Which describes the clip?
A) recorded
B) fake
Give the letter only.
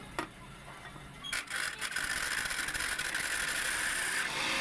A